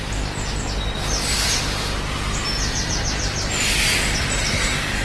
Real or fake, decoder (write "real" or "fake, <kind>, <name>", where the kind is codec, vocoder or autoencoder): real